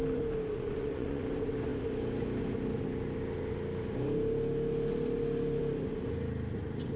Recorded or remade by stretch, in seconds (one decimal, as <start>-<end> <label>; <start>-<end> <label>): 0.0-0.5 recorded; 0.5-1.2 remade; 1.2-7.0 recorded